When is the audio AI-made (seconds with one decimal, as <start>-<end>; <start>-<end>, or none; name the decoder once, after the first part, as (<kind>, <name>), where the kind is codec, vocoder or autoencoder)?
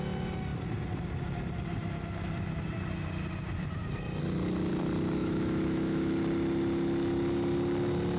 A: 5.2-6.1 (autoencoder, DAC-VAE)